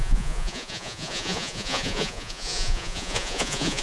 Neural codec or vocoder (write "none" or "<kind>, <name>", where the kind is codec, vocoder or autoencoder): vocoder, Vocos